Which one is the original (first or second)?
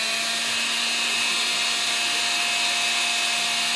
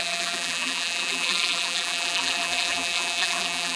first